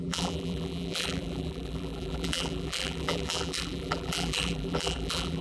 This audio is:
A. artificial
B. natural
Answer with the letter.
A